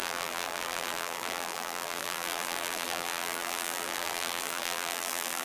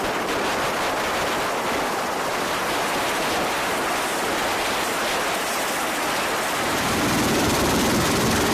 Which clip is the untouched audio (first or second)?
second